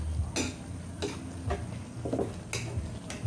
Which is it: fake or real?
real